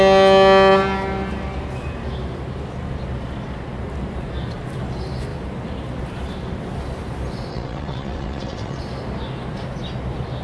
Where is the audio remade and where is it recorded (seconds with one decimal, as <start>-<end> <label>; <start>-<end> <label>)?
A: 0.0-7.5 recorded; 7.5-8.8 remade; 8.8-10.4 recorded